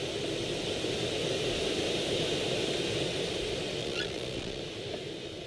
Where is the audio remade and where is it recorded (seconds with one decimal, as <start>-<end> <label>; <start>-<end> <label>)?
0.0-3.8 recorded; 3.8-4.6 remade; 4.6-5.5 recorded